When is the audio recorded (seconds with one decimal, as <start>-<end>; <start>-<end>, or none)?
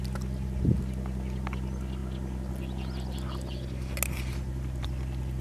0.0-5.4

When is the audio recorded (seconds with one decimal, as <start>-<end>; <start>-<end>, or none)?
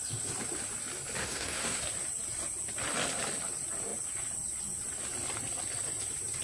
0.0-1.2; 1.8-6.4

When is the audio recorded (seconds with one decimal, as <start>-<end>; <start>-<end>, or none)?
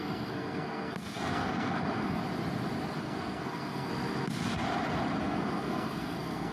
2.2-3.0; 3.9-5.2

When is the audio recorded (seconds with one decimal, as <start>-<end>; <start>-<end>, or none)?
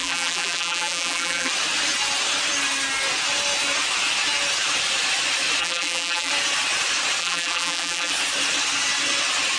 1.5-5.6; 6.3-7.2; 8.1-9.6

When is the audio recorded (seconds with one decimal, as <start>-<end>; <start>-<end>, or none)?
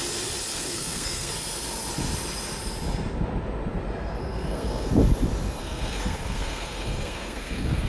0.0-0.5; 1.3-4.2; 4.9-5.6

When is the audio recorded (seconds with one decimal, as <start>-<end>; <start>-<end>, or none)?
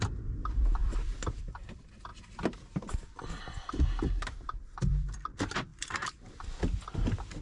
2.1-4.6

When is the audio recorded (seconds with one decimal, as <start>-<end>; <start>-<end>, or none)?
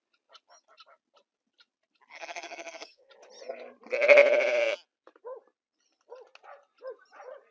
0.0-2.1; 3.1-7.5